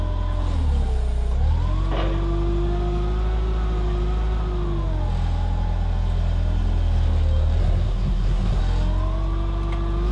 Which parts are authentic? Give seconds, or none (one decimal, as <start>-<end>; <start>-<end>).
0.0-7.6; 8.6-10.1